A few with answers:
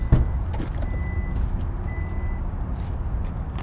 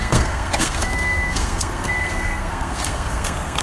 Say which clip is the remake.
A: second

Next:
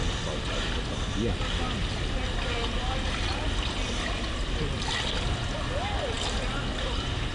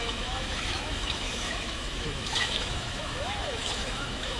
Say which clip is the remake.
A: second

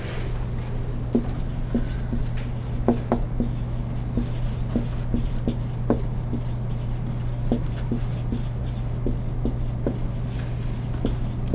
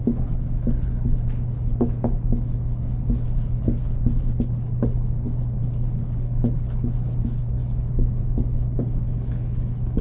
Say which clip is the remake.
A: second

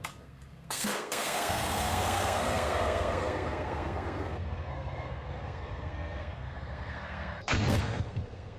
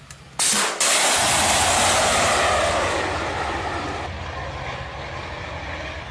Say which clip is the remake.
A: first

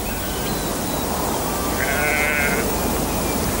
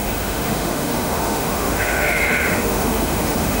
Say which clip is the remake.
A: second